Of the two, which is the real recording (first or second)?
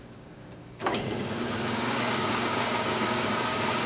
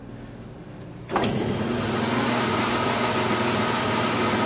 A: second